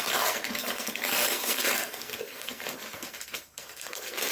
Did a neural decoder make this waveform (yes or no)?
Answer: yes